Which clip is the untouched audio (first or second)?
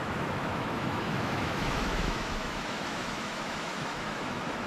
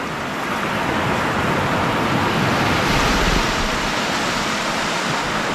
second